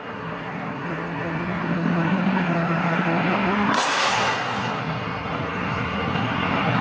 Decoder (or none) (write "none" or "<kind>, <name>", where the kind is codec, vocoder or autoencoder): codec, SNAC